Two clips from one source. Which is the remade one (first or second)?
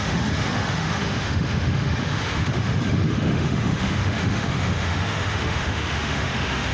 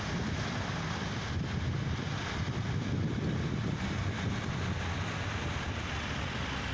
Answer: first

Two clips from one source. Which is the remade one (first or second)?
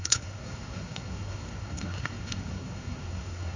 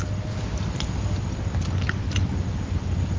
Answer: first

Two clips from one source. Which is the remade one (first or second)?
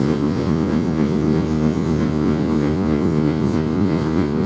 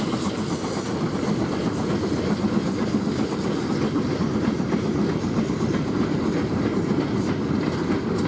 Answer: first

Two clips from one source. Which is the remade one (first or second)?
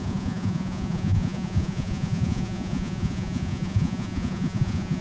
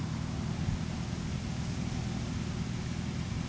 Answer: first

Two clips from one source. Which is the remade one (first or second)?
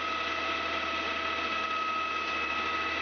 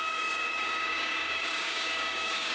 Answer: second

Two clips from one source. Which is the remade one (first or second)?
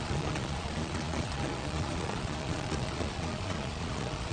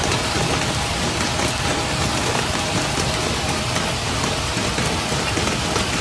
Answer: first